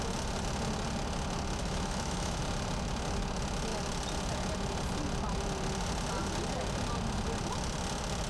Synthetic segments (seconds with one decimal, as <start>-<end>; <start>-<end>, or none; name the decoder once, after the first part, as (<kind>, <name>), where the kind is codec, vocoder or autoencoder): 1.6-2.4 (autoencoder, DAC-VAE)